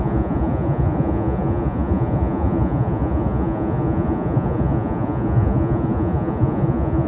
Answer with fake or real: fake